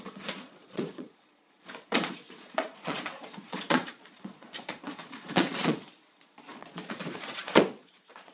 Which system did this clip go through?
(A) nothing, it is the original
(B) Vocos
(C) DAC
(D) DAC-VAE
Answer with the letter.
B